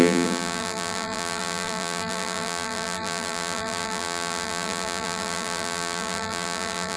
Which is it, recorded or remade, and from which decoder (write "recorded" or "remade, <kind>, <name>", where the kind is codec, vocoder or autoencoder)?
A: remade, vocoder, BigVGAN v2